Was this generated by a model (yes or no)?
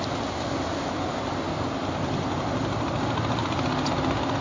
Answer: no